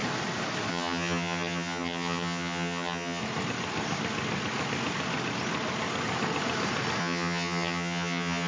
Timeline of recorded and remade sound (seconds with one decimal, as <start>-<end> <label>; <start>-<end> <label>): 0.0-0.7 recorded; 0.7-3.2 remade; 3.2-7.0 recorded; 7.0-8.5 remade